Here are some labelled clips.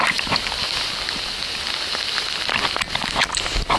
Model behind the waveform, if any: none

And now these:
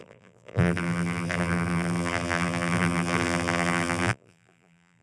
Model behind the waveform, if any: vocoder, BigVGAN v2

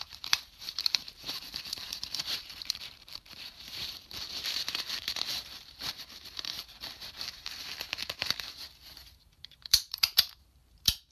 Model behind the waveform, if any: vocoder, BigVGAN v2